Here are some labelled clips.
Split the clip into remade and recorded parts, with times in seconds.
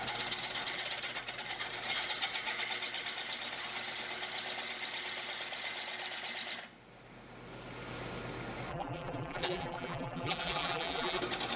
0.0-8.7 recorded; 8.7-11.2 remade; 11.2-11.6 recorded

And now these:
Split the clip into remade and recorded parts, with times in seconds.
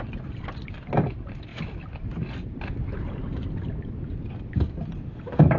0.0-5.6 recorded